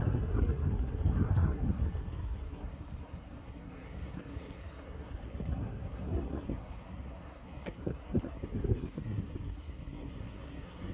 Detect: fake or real fake